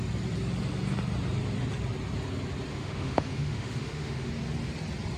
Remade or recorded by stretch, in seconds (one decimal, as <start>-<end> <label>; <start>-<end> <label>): 0.0-2.7 recorded; 2.7-4.3 remade; 4.3-5.2 recorded